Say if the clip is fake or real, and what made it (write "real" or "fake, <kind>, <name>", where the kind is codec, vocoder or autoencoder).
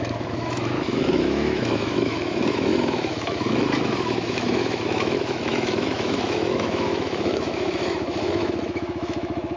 fake, autoencoder, DAC-VAE